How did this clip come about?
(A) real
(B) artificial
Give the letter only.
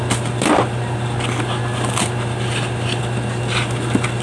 A